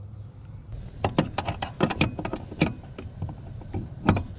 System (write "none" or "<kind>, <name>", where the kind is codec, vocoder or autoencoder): none